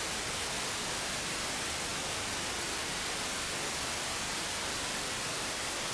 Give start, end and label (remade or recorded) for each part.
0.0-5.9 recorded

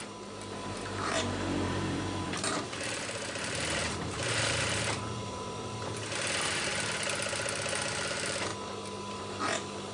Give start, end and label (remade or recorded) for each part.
0.0-6.7 remade; 6.7-8.1 recorded; 8.1-8.5 remade; 8.5-9.1 recorded; 9.1-9.9 remade

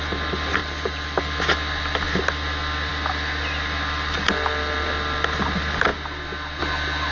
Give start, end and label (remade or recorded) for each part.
0.0-0.6 recorded; 0.6-1.2 remade; 1.2-7.1 recorded